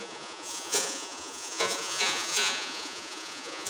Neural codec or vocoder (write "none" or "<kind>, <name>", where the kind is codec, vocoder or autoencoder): vocoder, Vocos